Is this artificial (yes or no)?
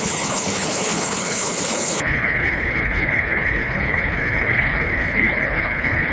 yes